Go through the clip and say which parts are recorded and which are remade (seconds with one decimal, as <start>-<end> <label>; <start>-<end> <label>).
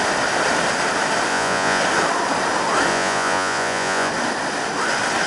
0.0-1.3 recorded; 1.3-1.8 remade; 1.8-2.9 recorded; 2.9-4.1 remade; 4.1-5.3 recorded